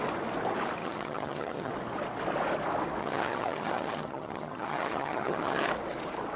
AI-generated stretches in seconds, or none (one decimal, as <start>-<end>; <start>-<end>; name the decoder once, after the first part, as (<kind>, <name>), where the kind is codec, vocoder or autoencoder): 0.8-1.7 (vocoder, HiFi-GAN); 3.0-5.7